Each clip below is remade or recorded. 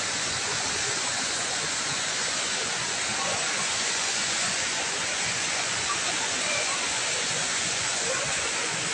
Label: remade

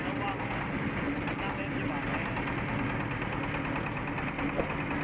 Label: recorded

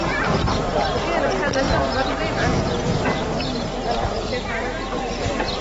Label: recorded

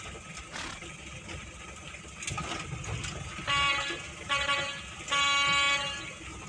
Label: recorded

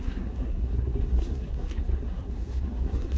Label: remade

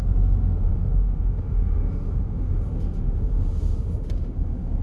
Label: remade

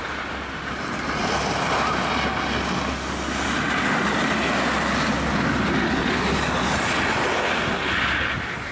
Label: recorded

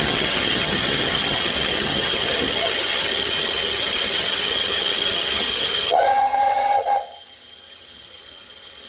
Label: remade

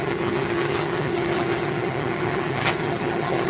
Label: remade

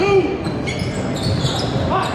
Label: recorded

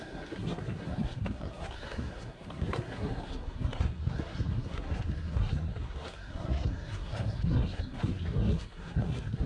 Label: remade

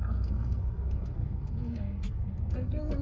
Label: remade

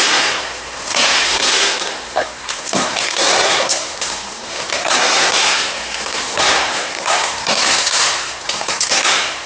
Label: remade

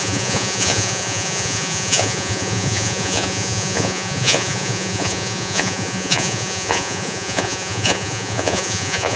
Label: remade